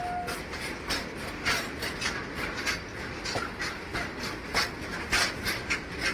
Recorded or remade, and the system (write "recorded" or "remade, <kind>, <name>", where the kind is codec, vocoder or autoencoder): recorded